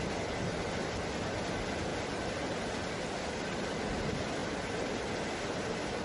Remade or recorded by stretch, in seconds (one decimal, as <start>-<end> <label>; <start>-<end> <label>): 0.0-1.9 recorded; 1.9-2.6 remade; 2.6-4.4 recorded; 4.4-5.4 remade; 5.4-6.0 recorded